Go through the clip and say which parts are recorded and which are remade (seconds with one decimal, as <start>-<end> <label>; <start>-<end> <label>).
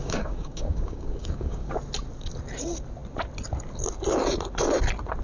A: 0.0-1.7 remade; 1.7-5.2 recorded